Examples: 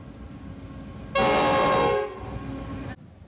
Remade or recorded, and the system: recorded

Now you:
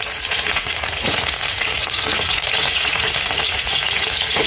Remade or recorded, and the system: remade, vocoder, Vocos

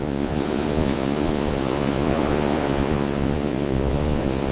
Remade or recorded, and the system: remade, vocoder, Vocos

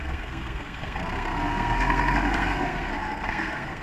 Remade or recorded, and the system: remade, codec, SNAC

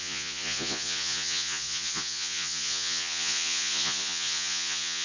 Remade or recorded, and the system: remade, vocoder, Vocos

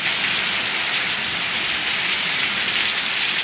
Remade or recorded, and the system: remade, vocoder, BigVGAN v2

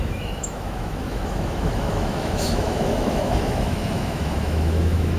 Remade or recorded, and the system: remade, autoencoder, DAC-VAE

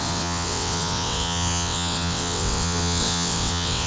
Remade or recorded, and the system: remade, vocoder, WaveNeXt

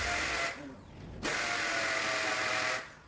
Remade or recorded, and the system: recorded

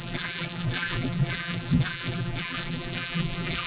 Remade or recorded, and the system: remade, vocoder, BigVGAN v2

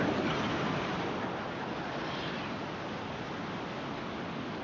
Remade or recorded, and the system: recorded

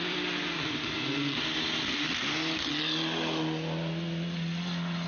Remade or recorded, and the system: recorded